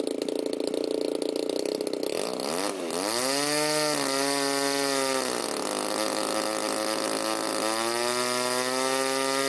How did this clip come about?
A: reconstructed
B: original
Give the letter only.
B